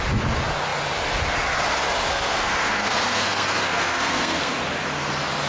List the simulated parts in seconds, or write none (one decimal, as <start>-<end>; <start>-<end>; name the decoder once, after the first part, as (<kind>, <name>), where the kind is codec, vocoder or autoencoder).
2.1-4.5 (codec, SNAC)